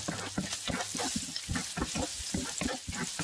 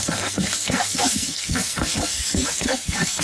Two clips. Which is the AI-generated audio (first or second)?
second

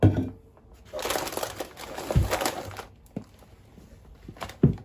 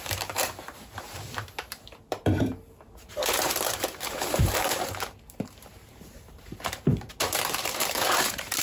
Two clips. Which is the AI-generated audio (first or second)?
second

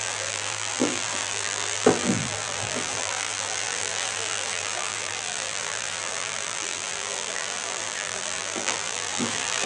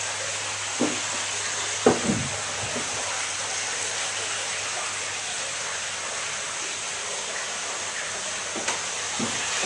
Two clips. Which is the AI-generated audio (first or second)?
first